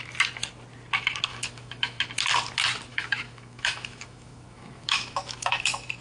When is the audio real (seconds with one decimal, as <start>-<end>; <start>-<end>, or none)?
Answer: 0.0-1.3; 2.0-2.9; 5.5-6.0